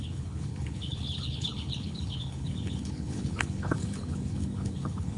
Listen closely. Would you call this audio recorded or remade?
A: remade